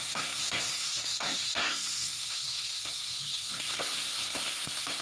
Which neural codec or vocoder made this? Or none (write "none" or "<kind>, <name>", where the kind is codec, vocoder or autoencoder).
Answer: codec, SNAC